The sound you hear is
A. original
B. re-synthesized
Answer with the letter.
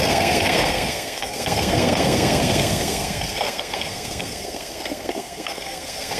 B